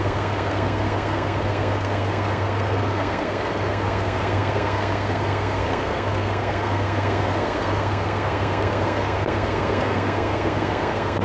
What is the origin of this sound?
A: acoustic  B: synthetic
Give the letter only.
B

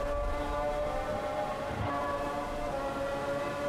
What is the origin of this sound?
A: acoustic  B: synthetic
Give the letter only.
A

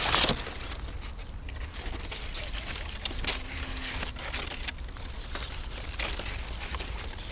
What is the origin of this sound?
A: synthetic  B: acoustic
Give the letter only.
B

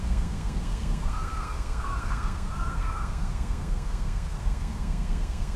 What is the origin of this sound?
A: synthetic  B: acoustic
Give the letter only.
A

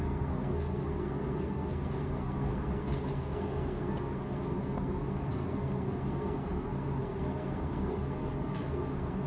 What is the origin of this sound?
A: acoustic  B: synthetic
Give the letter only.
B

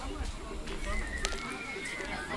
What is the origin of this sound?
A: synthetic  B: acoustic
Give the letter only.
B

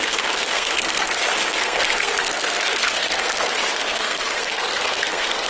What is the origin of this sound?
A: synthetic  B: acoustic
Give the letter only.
A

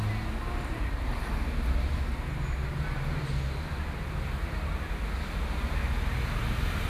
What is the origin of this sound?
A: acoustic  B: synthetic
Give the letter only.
A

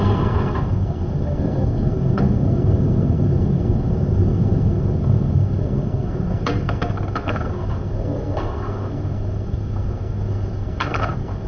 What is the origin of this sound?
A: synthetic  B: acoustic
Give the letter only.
A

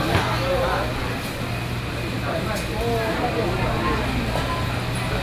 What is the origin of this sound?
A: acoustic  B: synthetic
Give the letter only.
A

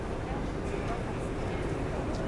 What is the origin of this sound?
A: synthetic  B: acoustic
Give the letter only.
B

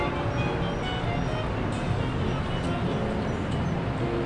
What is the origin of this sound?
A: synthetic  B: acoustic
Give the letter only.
B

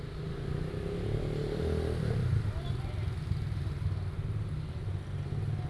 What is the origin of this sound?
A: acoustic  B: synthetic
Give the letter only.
A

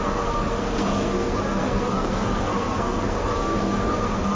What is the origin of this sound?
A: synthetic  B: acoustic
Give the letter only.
A